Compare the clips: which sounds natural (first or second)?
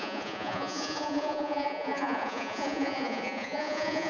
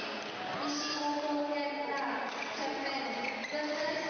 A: second